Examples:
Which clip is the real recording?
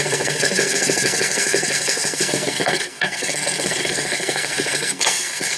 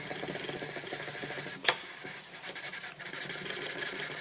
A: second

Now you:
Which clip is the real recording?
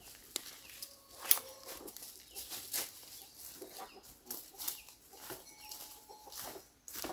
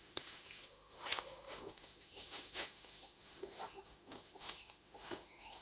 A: first